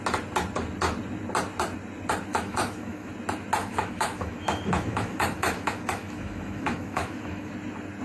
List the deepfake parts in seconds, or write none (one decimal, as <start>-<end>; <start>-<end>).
2.3-3.1; 3.6-7.5